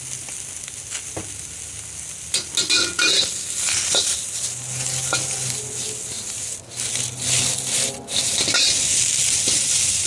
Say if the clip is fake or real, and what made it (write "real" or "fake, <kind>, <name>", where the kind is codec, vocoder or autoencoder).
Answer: real